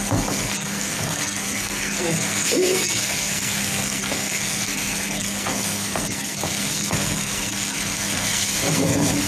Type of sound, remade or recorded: remade